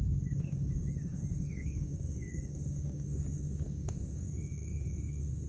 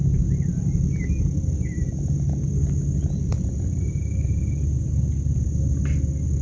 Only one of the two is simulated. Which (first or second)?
first